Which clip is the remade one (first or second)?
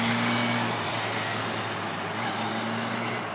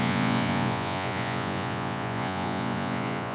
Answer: second